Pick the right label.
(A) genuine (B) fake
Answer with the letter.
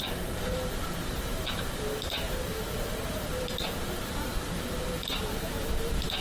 B